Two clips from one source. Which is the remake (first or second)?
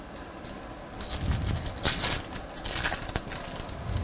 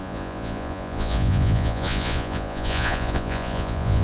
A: second